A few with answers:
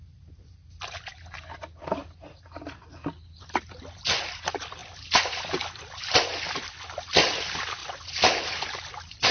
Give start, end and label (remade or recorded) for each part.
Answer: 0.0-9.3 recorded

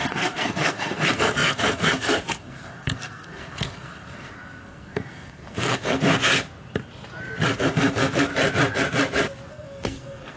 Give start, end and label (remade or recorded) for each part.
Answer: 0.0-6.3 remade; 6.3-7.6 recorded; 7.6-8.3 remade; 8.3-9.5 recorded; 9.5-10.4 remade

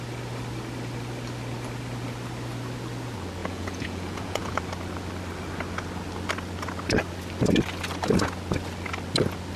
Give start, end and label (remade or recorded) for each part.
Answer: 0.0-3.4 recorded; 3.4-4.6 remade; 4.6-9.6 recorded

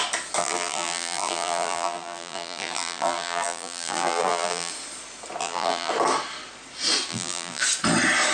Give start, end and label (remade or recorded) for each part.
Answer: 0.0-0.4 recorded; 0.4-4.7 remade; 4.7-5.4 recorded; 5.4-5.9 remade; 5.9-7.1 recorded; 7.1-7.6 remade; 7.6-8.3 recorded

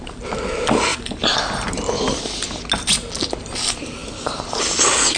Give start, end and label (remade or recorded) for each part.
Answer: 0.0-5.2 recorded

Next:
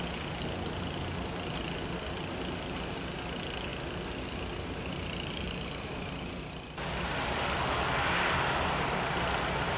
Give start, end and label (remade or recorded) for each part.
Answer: 0.0-9.8 recorded